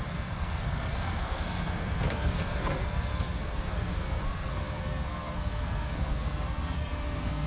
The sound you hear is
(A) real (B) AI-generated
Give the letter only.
B